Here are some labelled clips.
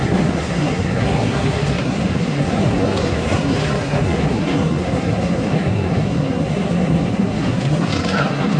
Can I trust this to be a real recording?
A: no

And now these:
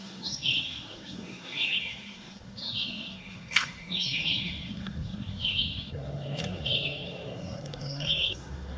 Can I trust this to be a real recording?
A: no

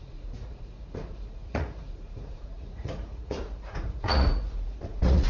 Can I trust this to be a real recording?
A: no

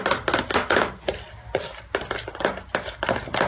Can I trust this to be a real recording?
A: yes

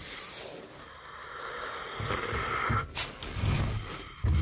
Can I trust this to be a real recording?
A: yes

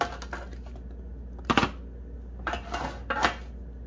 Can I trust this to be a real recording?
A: yes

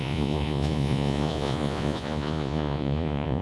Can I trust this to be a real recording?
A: no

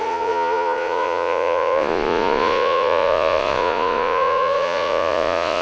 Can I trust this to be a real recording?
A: no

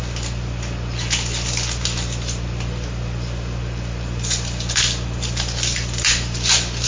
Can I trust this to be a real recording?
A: yes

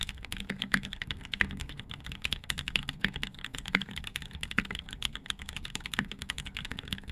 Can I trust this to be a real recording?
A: no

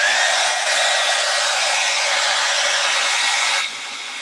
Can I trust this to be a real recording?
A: no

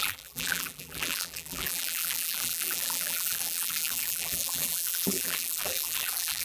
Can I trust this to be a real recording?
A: no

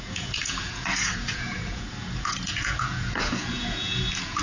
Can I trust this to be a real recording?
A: no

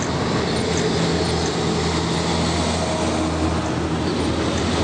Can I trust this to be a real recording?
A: yes